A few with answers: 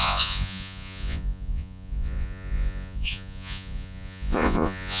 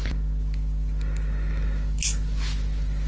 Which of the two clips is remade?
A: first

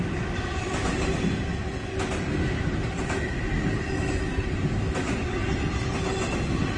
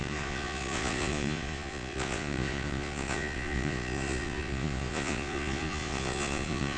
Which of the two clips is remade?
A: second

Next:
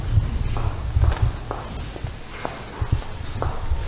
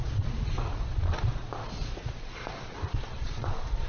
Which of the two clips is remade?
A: second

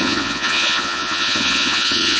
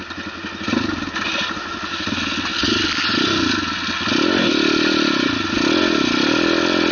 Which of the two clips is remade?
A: first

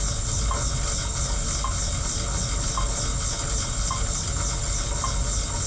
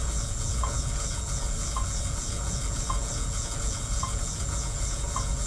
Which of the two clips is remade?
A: second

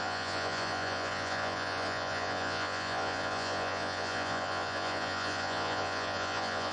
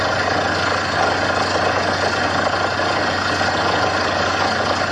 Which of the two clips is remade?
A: first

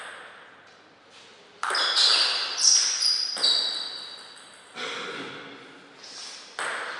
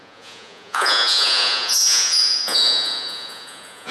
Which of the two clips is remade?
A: second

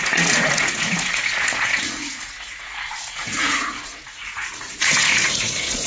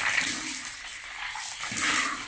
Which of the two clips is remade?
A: first